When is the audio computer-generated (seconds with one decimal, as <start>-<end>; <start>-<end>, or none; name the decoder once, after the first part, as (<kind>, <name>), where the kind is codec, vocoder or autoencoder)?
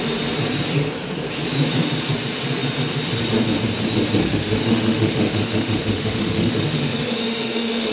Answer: 4.2-7.9 (autoencoder, DAC-VAE)